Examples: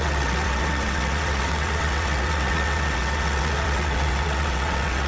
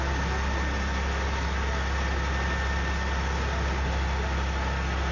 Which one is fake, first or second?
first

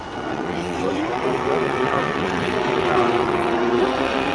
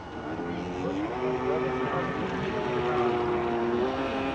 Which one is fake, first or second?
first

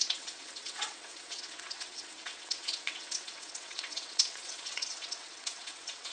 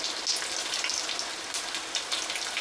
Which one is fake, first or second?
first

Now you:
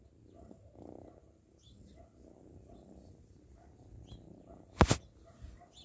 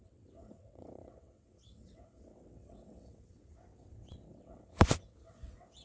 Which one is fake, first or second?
second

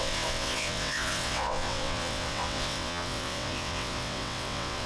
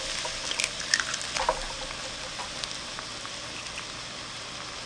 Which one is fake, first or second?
first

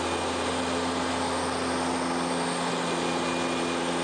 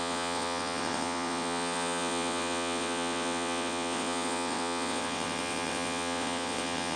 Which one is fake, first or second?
second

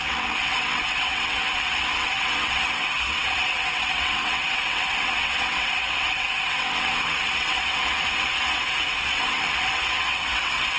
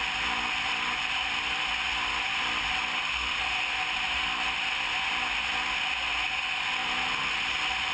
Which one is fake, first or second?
first